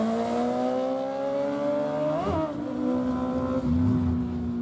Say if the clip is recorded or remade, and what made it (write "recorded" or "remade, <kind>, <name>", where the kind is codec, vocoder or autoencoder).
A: recorded